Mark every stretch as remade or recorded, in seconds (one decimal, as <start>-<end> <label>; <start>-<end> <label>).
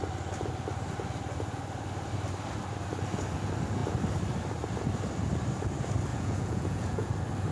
0.0-6.1 recorded; 6.1-7.1 remade; 7.1-7.5 recorded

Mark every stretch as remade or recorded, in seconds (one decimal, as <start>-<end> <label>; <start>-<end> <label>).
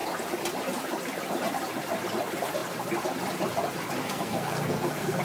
0.0-4.0 recorded; 4.0-5.2 remade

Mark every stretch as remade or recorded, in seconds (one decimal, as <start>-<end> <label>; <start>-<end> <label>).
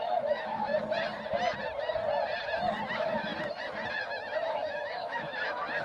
0.0-0.7 remade; 0.7-2.9 recorded; 2.9-3.3 remade; 3.3-4.0 recorded; 4.0-5.8 remade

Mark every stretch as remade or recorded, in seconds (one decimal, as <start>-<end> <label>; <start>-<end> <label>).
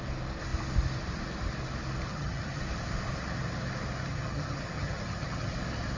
0.0-2.1 recorded; 2.1-2.6 remade; 2.6-4.1 recorded; 4.1-5.5 remade; 5.5-6.0 recorded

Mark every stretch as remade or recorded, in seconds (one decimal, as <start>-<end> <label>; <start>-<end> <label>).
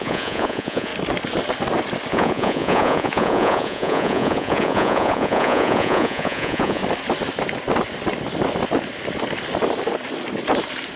0.0-0.9 remade; 0.9-2.1 recorded; 2.1-6.8 remade; 6.8-11.0 recorded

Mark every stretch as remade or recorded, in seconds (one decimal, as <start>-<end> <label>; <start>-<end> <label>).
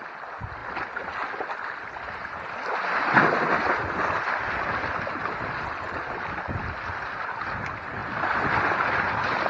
0.0-9.5 recorded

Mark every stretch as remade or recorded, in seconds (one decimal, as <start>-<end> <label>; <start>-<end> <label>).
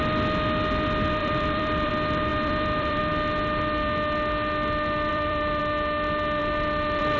0.0-1.2 recorded; 1.2-1.9 remade; 1.9-2.3 recorded; 2.3-3.0 remade; 3.0-5.1 recorded; 5.1-5.6 remade; 5.6-6.4 recorded; 6.4-7.2 remade